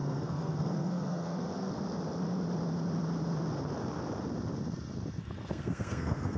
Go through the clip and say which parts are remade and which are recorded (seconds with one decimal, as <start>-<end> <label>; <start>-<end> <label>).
0.0-1.7 remade; 1.7-5.5 recorded; 5.5-6.4 remade